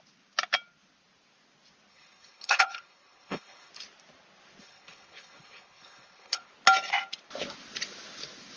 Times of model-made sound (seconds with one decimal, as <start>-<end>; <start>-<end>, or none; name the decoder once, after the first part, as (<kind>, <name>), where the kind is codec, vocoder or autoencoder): 1.9-3.7 (codec, HILCodec); 4.6-6.5